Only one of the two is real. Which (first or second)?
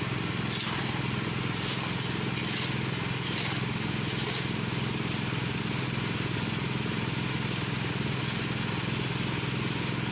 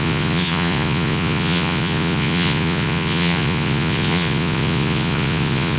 first